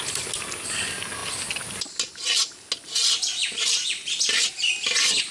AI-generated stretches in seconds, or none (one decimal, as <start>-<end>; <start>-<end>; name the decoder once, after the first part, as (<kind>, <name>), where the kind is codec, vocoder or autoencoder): none